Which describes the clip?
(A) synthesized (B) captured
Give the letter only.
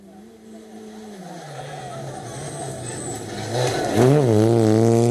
B